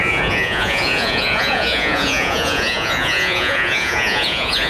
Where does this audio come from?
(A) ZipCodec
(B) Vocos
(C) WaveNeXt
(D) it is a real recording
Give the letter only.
B